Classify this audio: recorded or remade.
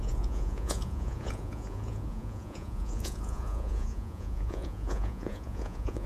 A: remade